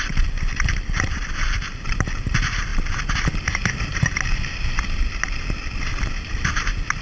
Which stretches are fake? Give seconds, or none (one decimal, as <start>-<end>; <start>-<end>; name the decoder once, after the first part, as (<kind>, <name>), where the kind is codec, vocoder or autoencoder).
none